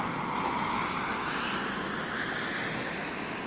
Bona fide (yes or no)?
yes